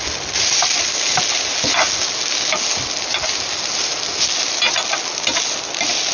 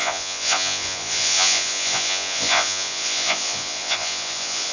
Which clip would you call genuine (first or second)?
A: first